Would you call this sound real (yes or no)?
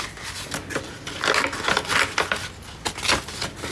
yes